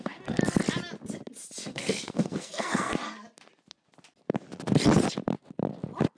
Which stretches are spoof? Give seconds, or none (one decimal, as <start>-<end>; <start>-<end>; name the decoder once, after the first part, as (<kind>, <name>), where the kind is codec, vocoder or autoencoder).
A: 0.0-0.4 (codec, SNAC); 1.7-2.9